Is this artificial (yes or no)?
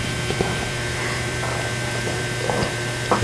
yes